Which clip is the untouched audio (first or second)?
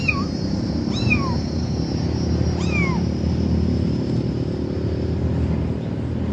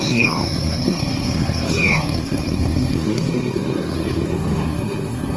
first